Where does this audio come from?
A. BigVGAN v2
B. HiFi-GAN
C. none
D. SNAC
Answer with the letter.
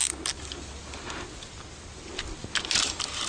C